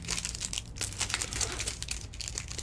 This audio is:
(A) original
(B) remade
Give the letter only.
A